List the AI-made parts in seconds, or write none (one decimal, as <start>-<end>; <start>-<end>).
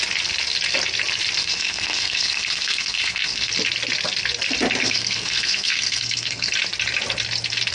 1.4-3.5; 4.8-6.5